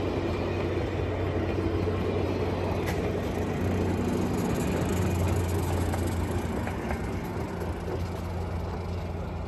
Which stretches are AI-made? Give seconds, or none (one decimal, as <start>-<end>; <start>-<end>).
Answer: none